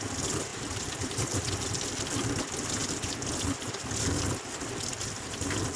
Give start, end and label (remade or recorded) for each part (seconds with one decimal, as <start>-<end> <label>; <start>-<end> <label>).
0.0-0.5 recorded; 0.5-1.4 remade; 1.4-5.8 recorded